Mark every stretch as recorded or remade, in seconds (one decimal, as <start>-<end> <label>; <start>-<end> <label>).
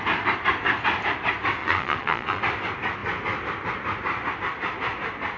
0.0-1.6 recorded; 1.6-2.4 remade; 2.4-5.4 recorded